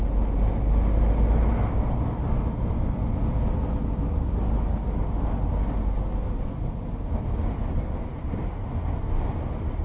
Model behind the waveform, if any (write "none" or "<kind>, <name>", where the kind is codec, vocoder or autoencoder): none